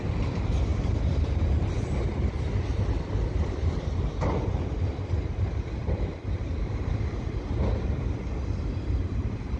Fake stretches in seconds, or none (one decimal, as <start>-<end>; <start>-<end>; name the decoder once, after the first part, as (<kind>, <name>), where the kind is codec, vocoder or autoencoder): none